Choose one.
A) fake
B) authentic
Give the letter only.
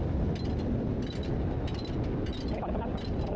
B